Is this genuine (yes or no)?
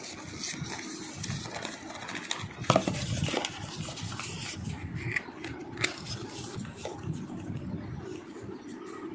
yes